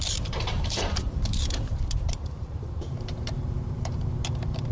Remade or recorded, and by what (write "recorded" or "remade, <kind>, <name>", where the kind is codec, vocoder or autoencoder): remade, vocoder, BigVGAN v2